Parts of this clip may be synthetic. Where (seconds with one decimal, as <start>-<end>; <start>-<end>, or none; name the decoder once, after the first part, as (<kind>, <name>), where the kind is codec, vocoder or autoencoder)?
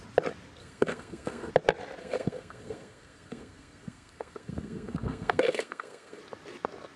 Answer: 0.6-1.5 (codec, SNAC); 2.0-6.2